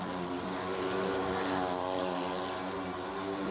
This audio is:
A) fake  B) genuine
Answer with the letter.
B